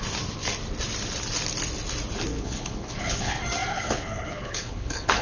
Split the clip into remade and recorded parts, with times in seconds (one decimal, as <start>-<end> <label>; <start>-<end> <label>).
0.0-2.3 recorded; 2.3-3.3 remade; 3.3-3.7 recorded; 3.7-5.2 remade